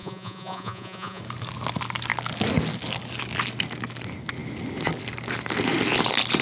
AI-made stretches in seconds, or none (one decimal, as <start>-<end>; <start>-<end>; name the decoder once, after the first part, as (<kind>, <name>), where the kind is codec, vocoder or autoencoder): 0.0-1.2 (vocoder, Vocos)